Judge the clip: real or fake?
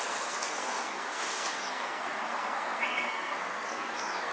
fake